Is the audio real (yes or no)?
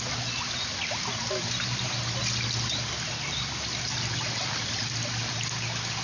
yes